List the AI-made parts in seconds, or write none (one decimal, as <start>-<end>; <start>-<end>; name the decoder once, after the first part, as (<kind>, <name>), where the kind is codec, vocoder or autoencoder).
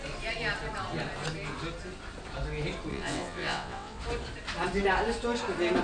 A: 2.9-4.0 (vocoder, WaveNeXt)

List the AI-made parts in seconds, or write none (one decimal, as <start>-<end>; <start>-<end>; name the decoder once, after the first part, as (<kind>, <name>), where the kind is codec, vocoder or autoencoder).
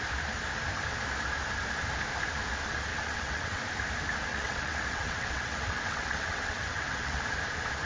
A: 2.9-3.6 (vocoder, WaveNeXt); 4.3-7.2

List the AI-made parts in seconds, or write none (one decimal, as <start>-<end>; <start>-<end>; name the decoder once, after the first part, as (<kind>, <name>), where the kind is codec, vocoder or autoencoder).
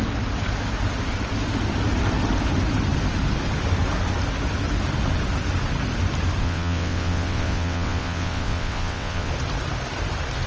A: 6.4-9.3 (vocoder, WaveNeXt)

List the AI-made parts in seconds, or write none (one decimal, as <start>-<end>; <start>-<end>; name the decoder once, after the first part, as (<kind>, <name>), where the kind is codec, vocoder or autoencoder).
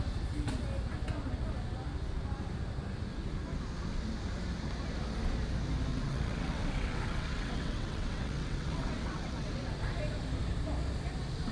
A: 5.9-9.5 (vocoder, WaveNeXt)